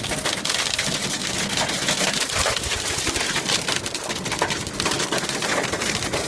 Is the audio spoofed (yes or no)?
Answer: no